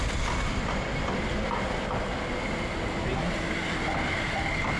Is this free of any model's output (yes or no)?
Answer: yes